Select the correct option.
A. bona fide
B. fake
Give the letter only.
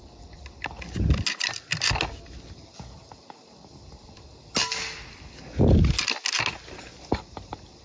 A